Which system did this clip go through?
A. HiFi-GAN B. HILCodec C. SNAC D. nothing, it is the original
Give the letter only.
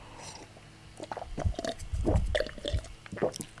D